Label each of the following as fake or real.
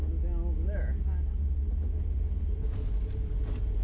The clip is real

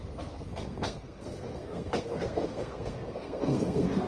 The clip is fake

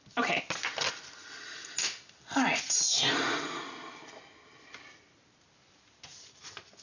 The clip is real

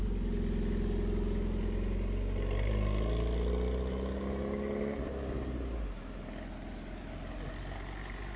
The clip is real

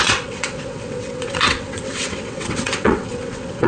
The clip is fake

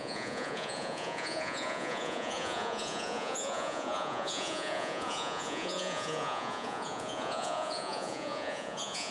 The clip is fake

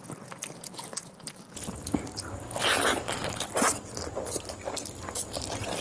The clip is real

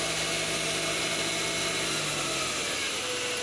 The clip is real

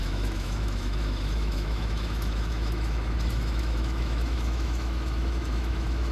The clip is fake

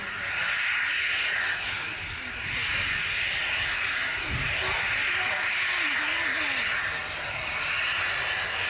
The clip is real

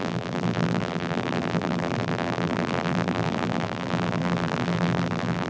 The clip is fake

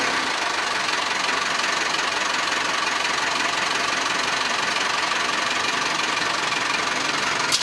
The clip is real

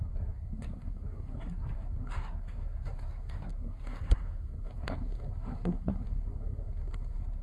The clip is fake